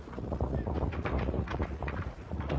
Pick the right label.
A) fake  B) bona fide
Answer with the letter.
A